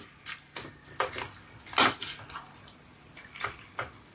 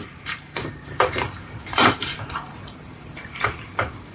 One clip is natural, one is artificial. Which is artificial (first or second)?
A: second